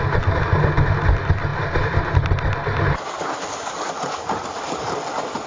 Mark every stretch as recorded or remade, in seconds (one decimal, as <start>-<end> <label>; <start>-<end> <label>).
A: 0.0-5.5 recorded